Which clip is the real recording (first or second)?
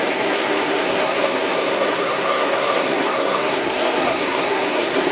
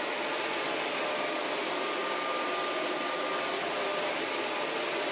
second